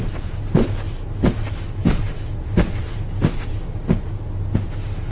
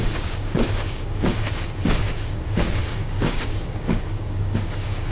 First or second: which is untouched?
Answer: first